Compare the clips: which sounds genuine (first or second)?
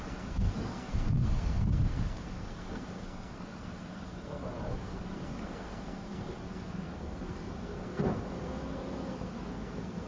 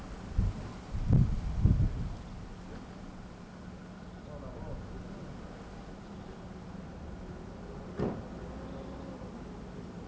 second